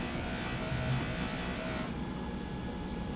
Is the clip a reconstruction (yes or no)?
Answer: yes